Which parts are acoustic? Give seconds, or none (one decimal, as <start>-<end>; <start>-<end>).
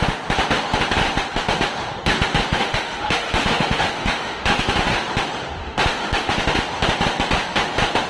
0.0-2.5; 4.7-5.6; 6.3-8.1